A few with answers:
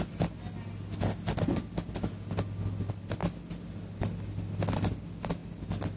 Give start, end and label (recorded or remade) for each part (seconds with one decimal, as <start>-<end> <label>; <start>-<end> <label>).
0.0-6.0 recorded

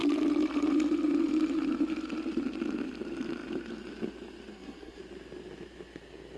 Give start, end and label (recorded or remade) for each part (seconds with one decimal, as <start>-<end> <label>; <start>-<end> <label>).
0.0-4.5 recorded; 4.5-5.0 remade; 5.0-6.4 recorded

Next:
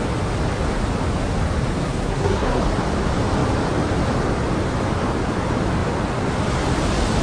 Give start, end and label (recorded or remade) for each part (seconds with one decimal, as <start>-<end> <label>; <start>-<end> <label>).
0.0-1.8 recorded; 1.8-2.6 remade; 2.6-7.2 recorded

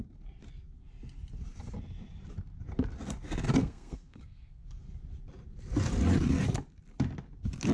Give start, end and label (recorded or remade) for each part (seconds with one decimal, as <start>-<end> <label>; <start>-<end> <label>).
0.0-3.6 recorded; 3.6-4.8 remade; 4.8-7.7 recorded

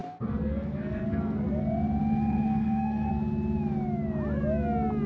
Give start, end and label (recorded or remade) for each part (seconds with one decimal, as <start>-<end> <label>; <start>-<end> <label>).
0.0-1.6 remade; 1.6-2.0 recorded; 2.0-3.1 remade; 3.1-5.1 recorded

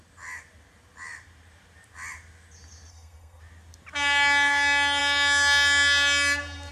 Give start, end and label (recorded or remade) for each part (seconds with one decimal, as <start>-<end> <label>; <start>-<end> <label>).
0.0-2.9 recorded; 2.9-3.4 remade; 3.4-6.7 recorded

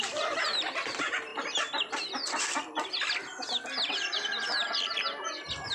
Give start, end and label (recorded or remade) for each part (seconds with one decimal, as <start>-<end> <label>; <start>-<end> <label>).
0.0-5.7 recorded

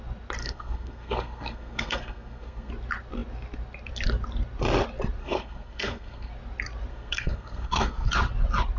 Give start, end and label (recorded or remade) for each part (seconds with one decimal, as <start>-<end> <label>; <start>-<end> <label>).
0.0-0.4 recorded; 0.4-2.7 remade; 2.7-5.2 recorded; 5.2-6.3 remade; 6.3-6.9 recorded; 6.9-8.1 remade; 8.1-8.8 recorded